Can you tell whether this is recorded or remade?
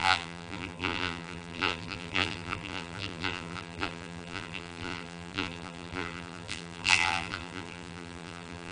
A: remade